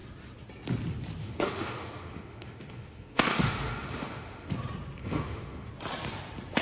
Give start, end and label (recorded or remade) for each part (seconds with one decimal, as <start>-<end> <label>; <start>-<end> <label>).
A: 0.0-1.2 recorded; 1.2-4.5 remade; 4.5-5.0 recorded; 5.0-5.7 remade; 5.7-6.6 recorded